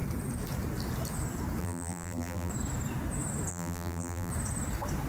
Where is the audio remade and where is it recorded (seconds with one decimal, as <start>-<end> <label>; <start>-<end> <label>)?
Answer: 0.0-1.6 recorded; 1.6-2.5 remade; 2.5-3.5 recorded; 3.5-4.3 remade; 4.3-5.1 recorded